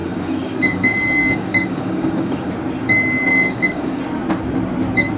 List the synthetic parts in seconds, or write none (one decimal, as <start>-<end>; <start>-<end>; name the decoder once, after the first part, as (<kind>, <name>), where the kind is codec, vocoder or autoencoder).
0.0-2.5 (codec, DAC); 3.3-4.0

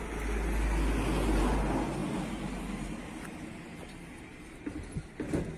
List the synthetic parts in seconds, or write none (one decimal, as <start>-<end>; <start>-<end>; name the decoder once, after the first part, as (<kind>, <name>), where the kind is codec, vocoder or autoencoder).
none

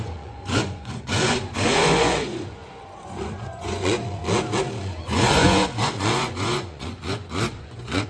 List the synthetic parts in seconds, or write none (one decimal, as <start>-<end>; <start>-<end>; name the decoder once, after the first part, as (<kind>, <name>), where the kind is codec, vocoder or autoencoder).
0.0-4.2 (vocoder, Vocos); 4.8-8.1

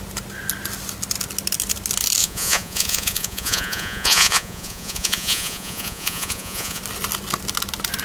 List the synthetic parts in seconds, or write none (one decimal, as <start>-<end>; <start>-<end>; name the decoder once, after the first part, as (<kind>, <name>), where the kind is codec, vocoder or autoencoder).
2.2-6.8 (vocoder, Vocos)

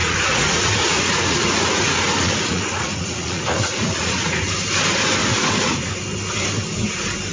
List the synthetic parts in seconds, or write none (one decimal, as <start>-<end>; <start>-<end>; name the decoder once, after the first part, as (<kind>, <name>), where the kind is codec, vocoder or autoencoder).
0.0-4.4 (vocoder, Vocos); 5.2-5.9

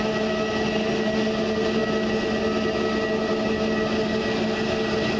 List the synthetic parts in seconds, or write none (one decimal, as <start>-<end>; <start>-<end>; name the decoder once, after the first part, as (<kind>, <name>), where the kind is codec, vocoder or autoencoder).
none

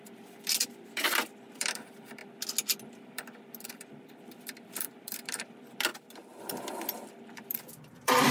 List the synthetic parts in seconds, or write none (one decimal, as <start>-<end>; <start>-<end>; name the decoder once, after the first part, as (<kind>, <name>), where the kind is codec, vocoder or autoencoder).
0.0-2.2 (vocoder, BigVGAN v2); 2.9-5.9; 6.4-8.3

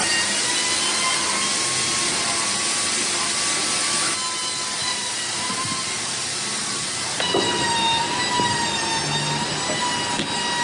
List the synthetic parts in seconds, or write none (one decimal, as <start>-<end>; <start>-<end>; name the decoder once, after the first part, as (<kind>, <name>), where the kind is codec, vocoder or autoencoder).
4.8-8.2 (vocoder, BigVGAN v2)